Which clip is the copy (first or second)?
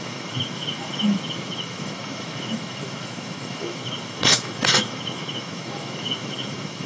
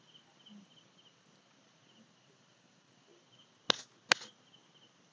first